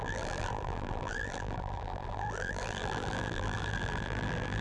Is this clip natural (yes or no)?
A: no